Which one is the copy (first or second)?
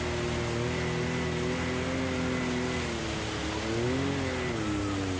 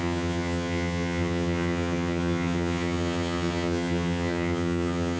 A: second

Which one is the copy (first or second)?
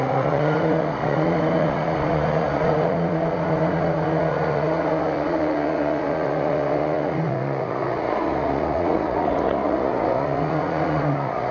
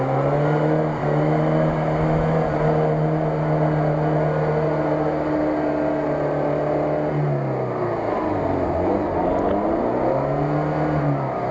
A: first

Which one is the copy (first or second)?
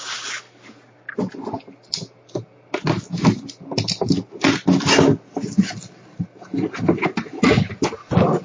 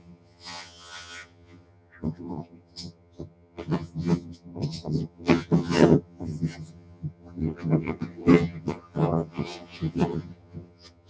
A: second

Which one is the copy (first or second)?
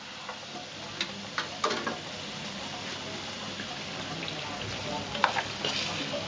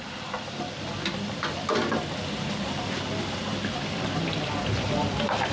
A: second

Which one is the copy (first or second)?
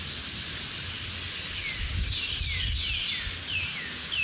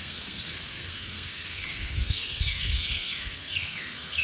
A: second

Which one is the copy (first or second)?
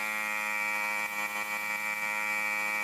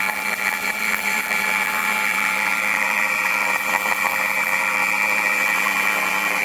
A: second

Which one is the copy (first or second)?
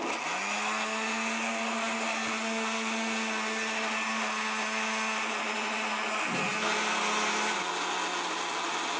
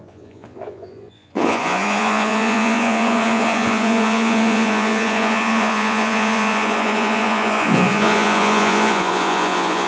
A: second